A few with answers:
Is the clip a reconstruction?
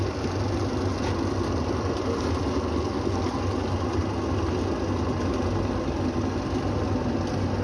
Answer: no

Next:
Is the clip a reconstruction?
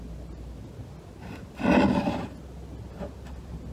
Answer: no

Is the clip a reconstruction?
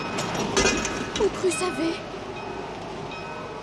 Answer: no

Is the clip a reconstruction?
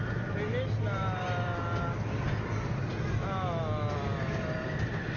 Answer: no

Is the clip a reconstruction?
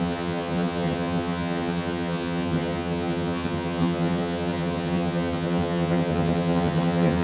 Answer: yes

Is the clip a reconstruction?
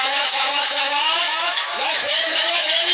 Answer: yes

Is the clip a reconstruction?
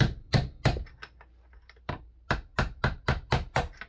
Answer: no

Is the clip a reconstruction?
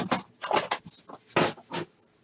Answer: no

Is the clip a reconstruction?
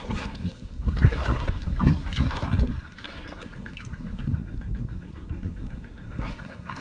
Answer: yes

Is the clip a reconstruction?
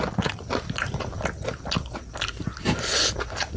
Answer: no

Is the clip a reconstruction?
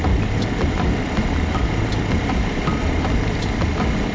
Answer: no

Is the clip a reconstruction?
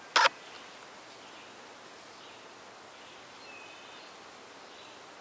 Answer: no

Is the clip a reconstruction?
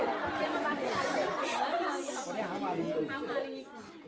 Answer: no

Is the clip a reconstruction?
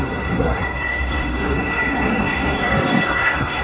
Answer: yes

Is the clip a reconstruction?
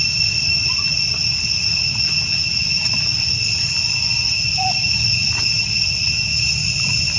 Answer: no